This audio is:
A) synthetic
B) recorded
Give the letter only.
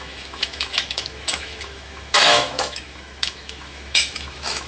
A